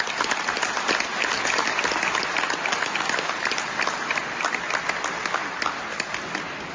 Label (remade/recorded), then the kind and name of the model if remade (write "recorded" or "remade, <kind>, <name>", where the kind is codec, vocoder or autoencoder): recorded